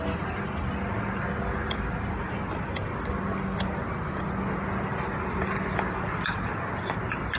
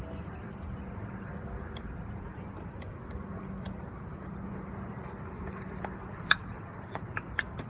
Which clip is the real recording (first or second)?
first